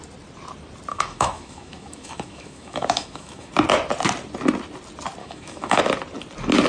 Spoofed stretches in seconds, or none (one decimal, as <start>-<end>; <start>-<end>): 0.9-3.5; 5.2-5.8